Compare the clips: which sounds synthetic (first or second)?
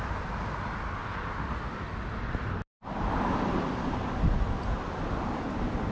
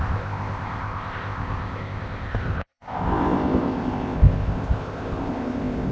second